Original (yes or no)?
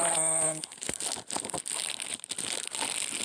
yes